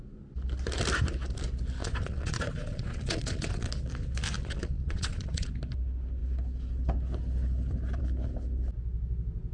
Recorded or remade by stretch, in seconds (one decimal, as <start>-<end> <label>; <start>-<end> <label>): 0.0-1.8 recorded; 1.8-3.7 remade; 3.7-4.4 recorded; 4.4-5.5 remade; 5.5-9.5 recorded